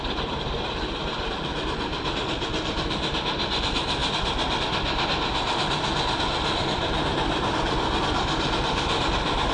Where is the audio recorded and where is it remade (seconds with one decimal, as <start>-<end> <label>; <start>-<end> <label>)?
0.0-9.5 recorded